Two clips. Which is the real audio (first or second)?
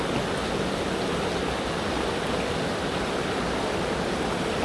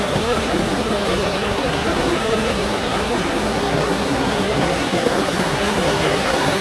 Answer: first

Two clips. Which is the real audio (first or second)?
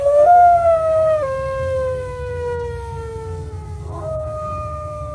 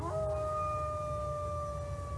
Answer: second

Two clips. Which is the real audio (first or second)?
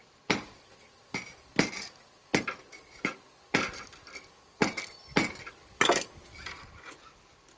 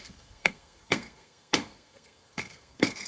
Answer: first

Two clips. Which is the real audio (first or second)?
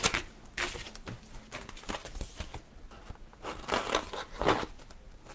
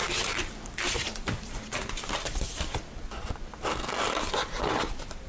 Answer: first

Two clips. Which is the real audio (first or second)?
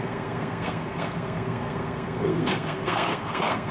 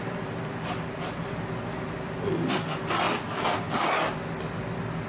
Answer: second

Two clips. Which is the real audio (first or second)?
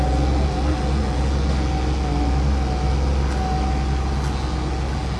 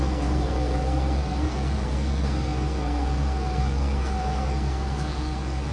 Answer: first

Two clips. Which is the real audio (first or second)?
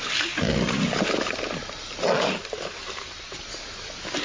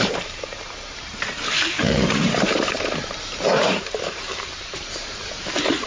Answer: first